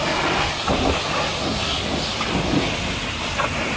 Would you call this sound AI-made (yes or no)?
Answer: no